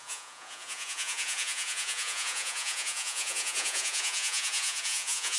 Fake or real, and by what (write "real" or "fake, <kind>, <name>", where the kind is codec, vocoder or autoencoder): fake, vocoder, Vocos